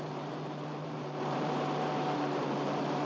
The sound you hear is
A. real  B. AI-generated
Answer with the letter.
B